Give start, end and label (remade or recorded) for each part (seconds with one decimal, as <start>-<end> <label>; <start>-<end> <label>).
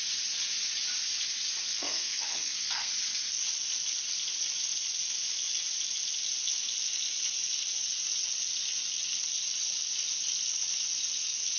0.0-1.7 recorded; 1.7-2.9 remade; 2.9-11.6 recorded